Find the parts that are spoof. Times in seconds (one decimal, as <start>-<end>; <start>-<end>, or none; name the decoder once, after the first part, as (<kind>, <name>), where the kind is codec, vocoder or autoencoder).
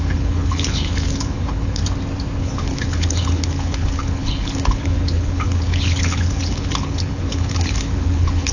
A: 0.0-1.8 (codec, HILCodec); 2.4-8.5